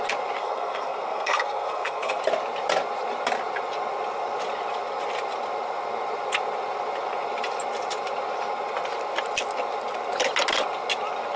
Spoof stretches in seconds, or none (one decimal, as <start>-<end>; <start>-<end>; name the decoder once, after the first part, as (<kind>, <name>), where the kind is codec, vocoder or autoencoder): 0.4-2.2 (codec, SNAC)